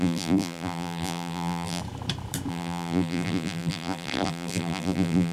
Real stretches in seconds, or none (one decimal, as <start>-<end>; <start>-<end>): 1.8-2.5